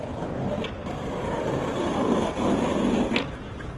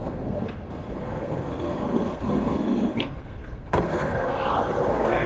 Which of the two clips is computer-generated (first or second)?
second